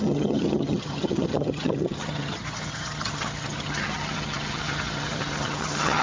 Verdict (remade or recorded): remade